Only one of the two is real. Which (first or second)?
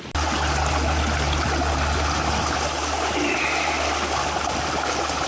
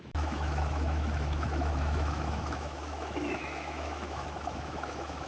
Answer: first